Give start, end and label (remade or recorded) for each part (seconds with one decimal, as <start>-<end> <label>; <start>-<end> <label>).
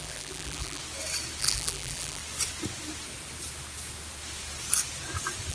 0.0-0.8 remade; 0.8-1.4 recorded; 1.4-2.2 remade; 2.2-5.5 recorded